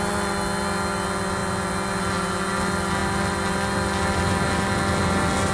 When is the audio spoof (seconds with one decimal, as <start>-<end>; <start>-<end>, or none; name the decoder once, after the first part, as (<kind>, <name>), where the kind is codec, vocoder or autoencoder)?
none

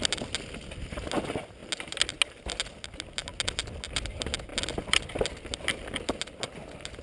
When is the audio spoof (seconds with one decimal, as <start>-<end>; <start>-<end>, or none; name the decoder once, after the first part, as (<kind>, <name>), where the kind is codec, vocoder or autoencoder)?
none

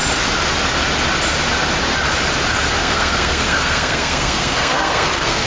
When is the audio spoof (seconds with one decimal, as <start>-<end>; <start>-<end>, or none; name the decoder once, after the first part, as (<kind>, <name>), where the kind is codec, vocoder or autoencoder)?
2.8-5.5 (codec, SNAC)

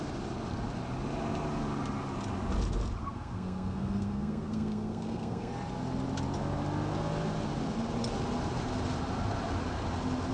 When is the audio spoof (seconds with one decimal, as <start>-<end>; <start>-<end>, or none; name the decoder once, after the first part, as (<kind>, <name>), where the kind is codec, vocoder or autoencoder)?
3.0-5.5 (codec, SNAC)

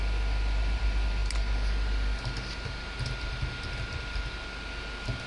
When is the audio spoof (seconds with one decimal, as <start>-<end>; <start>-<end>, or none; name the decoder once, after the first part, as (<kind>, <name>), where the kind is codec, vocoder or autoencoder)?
none

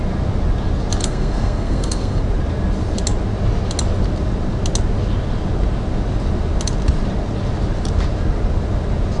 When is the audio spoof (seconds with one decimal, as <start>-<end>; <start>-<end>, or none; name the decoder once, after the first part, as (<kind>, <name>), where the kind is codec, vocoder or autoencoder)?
1.0-2.2 (codec, SNAC)

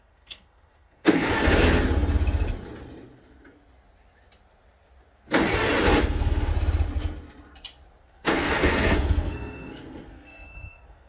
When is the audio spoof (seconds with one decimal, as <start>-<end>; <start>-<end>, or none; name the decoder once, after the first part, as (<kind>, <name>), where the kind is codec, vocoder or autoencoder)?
0.0-1.3 (codec, SNAC); 6.0-6.5; 8.0-11.1

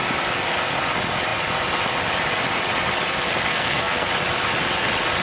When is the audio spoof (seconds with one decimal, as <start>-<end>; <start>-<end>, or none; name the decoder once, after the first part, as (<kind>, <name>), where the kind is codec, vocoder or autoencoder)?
3.5-4.1 (codec, SNAC)